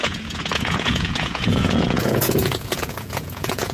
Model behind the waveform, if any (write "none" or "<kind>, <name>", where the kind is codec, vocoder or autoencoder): vocoder, Vocos